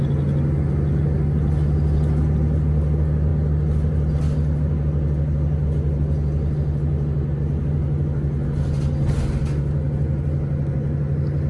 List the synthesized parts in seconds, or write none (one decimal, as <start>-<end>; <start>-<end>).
none